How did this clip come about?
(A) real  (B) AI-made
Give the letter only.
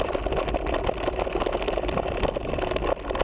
A